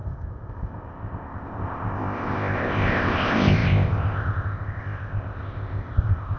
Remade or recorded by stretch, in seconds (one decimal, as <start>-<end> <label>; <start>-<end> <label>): 0.0-6.4 remade